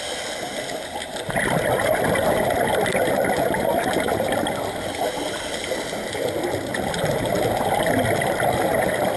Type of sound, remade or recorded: recorded